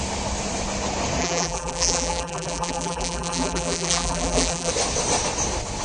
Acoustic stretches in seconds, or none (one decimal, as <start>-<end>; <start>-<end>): 0.0-1.2; 4.7-5.8